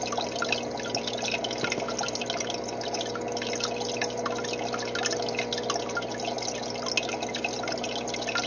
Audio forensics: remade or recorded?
recorded